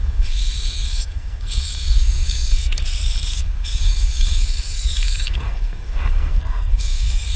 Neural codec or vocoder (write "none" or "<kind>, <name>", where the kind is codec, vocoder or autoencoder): codec, SNAC